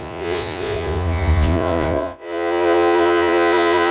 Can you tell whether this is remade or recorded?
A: remade